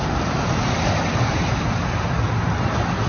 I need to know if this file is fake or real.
real